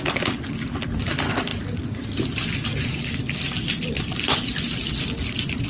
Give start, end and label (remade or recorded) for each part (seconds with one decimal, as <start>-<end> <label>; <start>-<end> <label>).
0.0-5.7 recorded